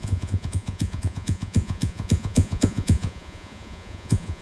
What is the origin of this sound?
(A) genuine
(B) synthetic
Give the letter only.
B